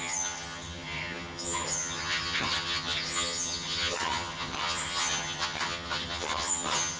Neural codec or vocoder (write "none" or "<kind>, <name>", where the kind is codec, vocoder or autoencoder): vocoder, HiFi-GAN